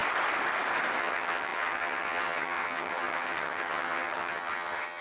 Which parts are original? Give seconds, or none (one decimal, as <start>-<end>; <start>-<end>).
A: 0.0-1.0